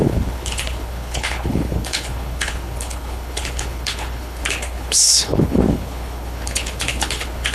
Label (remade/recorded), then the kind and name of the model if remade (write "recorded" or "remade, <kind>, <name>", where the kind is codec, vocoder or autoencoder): remade, codec, HILCodec